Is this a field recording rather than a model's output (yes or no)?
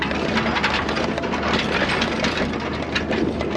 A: yes